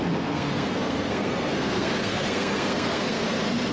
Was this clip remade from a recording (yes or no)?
yes